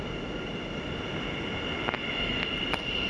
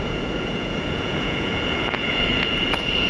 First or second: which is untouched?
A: first